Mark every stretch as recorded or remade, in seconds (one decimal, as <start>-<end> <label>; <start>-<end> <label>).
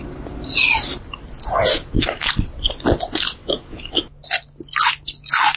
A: 0.0-1.7 recorded; 1.7-2.3 remade; 2.3-3.4 recorded; 3.4-4.2 remade; 4.2-5.6 recorded